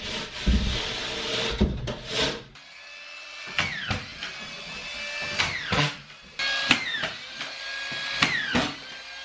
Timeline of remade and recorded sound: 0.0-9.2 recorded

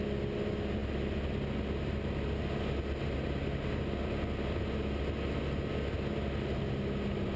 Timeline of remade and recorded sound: 0.0-7.4 recorded

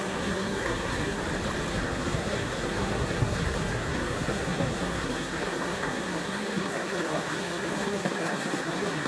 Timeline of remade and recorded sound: 0.0-1.2 remade; 1.2-1.7 recorded; 1.7-9.1 remade